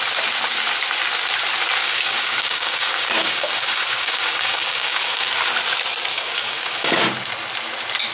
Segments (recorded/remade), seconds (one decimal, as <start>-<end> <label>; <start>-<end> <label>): 0.0-1.8 recorded; 1.8-5.3 remade; 5.3-6.1 recorded; 6.1-6.9 remade; 6.9-8.1 recorded